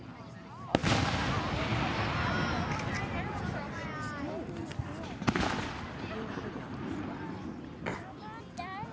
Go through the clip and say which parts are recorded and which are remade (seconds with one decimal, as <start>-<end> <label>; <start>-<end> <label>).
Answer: 0.0-8.9 recorded